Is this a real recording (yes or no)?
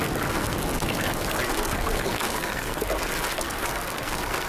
no